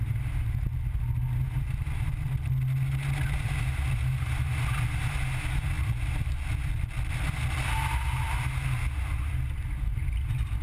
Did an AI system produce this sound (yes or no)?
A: no